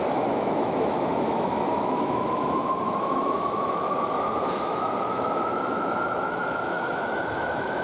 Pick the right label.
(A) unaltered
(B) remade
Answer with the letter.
B